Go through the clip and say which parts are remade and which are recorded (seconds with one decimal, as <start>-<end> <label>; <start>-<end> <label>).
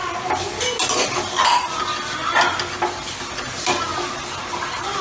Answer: 0.0-5.0 recorded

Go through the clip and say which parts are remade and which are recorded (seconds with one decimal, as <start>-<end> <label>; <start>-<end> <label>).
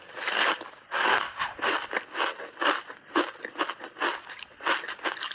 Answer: 0.0-1.1 recorded; 1.1-1.7 remade; 1.7-5.3 recorded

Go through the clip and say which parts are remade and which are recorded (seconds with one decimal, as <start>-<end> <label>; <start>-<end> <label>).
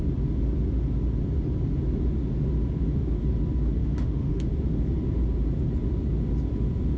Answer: 0.0-3.8 recorded; 3.8-4.5 remade; 4.5-7.0 recorded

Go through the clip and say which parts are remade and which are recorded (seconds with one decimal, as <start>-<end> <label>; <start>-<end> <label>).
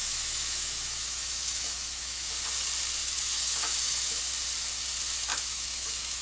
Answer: 0.0-2.3 remade; 2.3-3.0 recorded; 3.0-4.2 remade; 4.2-5.3 recorded; 5.3-6.2 remade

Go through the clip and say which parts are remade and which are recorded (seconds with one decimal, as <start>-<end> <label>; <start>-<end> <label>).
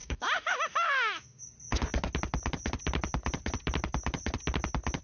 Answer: 0.0-1.4 remade; 1.4-5.0 recorded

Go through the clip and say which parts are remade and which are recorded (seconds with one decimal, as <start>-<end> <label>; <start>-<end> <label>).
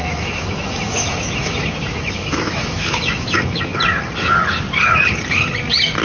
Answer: 0.0-3.6 remade; 3.6-6.0 recorded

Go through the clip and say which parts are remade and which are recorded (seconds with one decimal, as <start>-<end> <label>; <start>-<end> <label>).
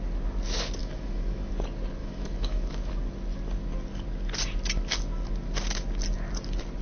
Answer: 0.0-0.8 recorded; 0.8-1.5 remade; 1.5-2.0 recorded; 2.0-2.9 remade; 2.9-6.8 recorded